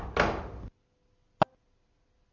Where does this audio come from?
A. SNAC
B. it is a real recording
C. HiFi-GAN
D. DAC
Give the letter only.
B